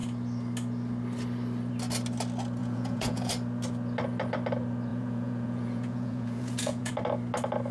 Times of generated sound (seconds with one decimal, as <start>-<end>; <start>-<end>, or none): 2.6-3.3; 4.9-6.9